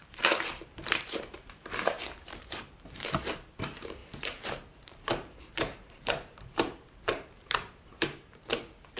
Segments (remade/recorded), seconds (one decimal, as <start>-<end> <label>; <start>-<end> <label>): 0.0-9.0 remade